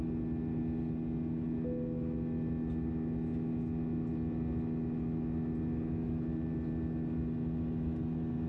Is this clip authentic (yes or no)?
yes